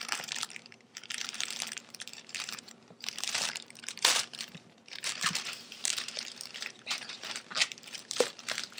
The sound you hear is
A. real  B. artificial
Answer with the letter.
B